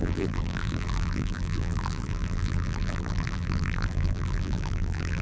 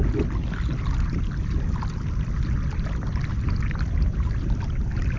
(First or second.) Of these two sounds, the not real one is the first